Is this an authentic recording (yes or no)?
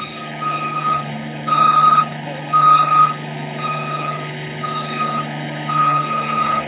no